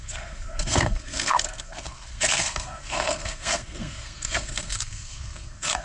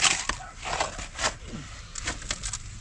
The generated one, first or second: first